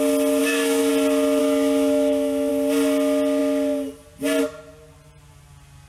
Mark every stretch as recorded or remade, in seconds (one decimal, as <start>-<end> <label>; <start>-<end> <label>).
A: 0.0-0.4 recorded; 0.4-0.9 remade; 0.9-1.4 recorded; 1.4-2.5 remade; 2.5-5.9 recorded